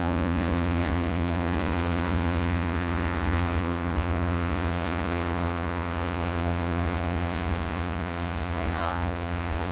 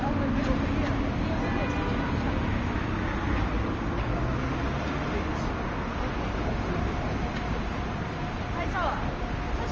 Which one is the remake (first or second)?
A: first